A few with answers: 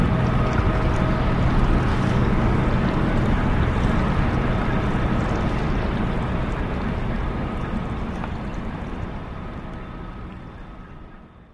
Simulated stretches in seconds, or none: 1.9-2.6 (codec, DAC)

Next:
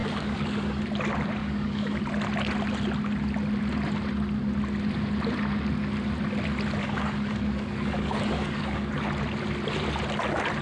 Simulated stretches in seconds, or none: 0.0-0.8 (codec, DAC); 1.4-2.0; 6.8-8.9